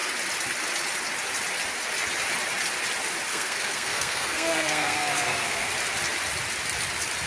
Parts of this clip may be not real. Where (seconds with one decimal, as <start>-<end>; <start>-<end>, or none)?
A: 3.3-5.7